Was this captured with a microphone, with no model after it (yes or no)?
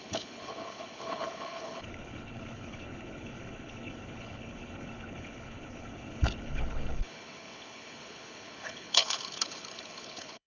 no